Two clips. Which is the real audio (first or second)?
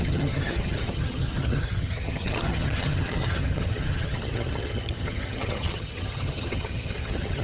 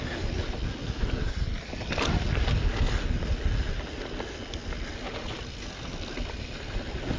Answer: second